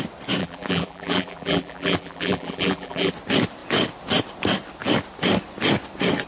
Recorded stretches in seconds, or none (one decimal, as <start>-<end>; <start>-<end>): 0.0-0.4; 3.1-6.3